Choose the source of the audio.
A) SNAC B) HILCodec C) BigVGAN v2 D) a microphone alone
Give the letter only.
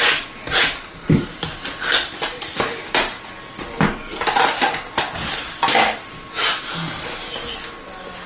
D